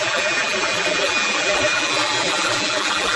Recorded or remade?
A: remade